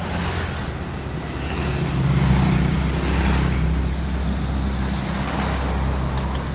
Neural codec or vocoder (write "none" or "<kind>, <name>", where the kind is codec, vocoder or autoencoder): none